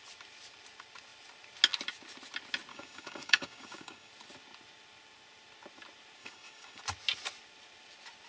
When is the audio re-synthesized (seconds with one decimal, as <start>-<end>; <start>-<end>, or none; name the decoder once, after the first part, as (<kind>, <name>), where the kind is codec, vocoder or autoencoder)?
2.7-4.1 (codec, DAC); 6.2-6.8